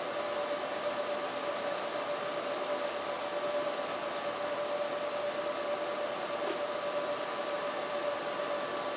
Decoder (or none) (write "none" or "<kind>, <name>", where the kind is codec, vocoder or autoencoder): none